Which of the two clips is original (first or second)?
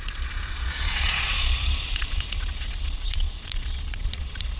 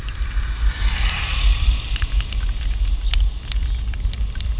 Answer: second